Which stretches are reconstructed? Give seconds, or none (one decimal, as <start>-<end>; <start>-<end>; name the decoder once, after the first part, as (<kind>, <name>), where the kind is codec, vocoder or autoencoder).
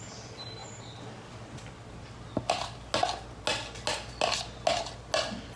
none